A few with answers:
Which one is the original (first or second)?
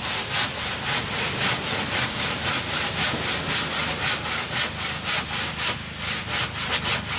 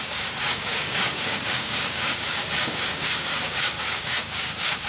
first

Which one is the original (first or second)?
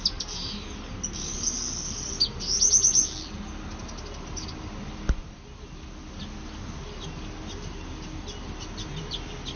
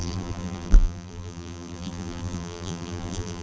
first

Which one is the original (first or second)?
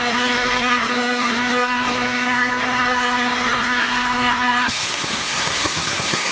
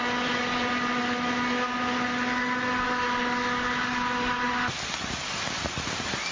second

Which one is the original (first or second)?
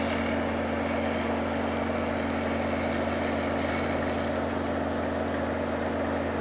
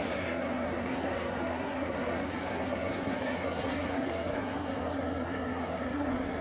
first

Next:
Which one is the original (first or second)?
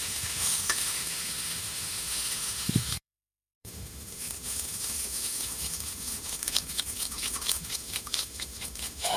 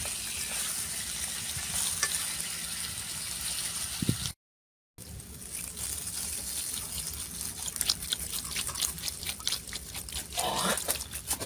second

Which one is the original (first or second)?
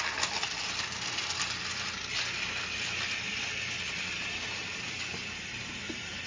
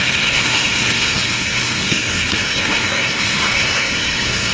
first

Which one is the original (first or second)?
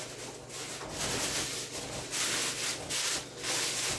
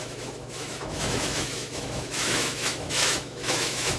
first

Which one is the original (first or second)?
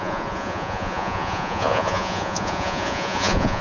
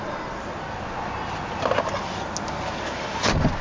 second